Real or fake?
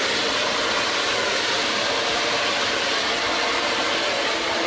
real